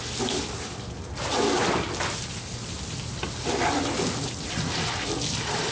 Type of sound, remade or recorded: recorded